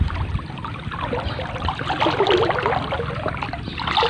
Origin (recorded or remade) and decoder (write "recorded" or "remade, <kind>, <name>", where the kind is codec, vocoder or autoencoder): recorded